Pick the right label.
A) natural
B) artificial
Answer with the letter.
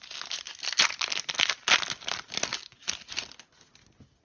A